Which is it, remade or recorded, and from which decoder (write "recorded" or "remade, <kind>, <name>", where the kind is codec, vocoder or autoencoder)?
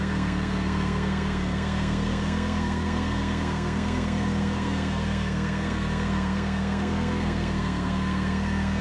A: remade, codec, SNAC